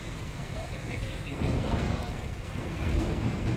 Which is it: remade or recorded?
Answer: remade